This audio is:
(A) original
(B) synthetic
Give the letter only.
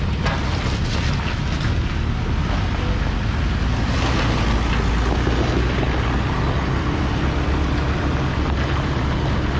A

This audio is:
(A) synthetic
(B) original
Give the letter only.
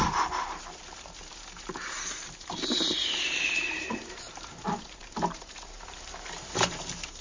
A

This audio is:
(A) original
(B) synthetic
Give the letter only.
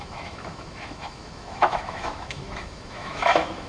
B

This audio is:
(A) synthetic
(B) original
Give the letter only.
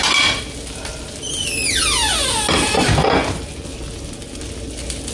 B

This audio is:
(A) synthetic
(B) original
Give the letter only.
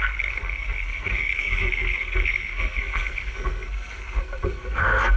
A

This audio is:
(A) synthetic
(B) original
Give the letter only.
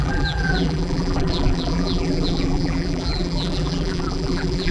A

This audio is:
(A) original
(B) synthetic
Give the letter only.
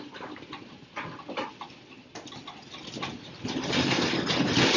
A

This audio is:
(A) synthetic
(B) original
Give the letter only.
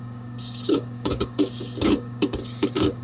A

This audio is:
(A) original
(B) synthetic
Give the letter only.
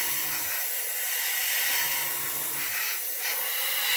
A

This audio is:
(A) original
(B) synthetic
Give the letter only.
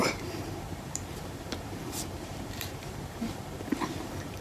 B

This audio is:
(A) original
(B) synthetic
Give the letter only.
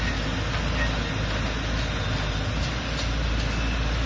A